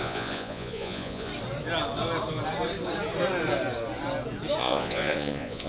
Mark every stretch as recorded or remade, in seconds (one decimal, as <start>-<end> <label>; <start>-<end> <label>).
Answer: 0.0-1.3 remade; 1.3-4.6 recorded; 4.6-5.7 remade